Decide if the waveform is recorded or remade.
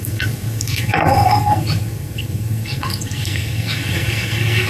remade